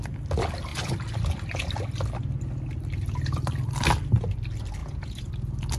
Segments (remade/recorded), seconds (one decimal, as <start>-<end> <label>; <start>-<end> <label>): 0.0-4.8 recorded; 4.8-5.3 remade; 5.3-5.8 recorded